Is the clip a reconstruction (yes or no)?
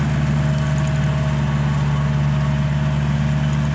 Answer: no